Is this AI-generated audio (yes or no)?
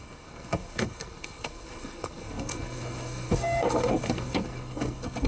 yes